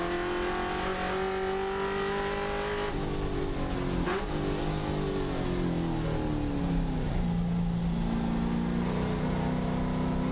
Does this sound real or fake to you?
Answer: real